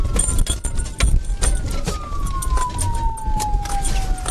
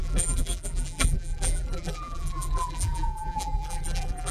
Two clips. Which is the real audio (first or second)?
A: first